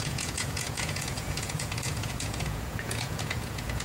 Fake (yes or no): yes